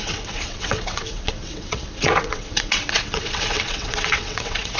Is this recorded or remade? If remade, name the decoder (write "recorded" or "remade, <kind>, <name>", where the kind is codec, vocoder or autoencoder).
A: remade, vocoder, WaveNeXt